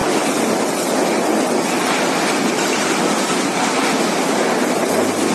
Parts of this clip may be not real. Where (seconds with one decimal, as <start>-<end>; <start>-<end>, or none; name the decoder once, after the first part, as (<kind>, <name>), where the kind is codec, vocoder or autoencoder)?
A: 0.0-3.2 (vocoder, BigVGAN v2)